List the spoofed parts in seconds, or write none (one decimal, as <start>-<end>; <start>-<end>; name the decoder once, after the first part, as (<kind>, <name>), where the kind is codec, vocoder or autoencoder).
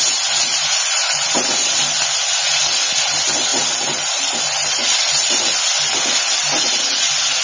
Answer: none